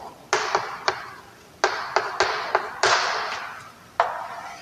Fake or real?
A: real